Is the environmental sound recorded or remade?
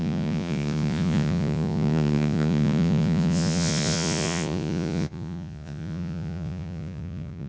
remade